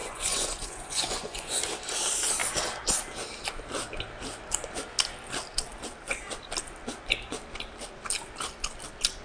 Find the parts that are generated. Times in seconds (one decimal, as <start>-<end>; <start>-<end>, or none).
0.0-1.6

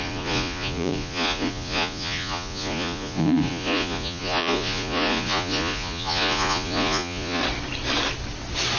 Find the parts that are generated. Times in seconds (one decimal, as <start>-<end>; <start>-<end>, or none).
0.0-7.4

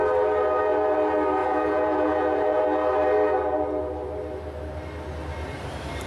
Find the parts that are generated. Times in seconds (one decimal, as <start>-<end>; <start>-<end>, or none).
1.4-2.6

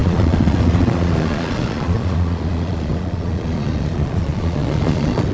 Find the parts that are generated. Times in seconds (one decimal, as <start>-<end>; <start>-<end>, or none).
0.0-5.3

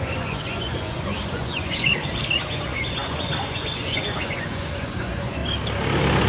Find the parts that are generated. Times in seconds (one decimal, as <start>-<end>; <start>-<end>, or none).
0.0-1.9; 2.4-5.4

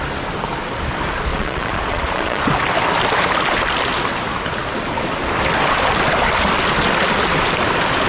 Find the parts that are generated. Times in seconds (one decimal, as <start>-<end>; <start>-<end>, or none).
1.3-2.4

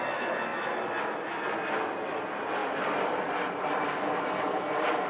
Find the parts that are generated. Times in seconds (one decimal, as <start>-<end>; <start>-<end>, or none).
none